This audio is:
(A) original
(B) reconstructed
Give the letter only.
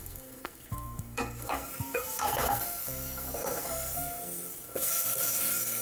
B